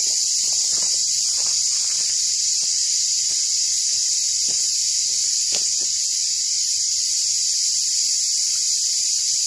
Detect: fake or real real